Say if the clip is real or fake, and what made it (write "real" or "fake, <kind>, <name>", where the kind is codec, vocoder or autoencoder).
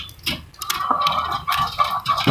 real